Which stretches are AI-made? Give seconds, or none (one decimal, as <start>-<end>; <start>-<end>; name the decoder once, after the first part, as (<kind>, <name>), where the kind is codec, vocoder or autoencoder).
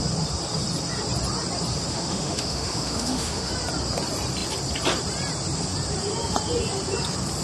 1.9-3.5 (autoencoder, DAC-VAE)